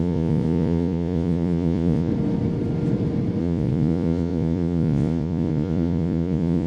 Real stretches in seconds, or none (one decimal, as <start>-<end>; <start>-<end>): 2.1-3.4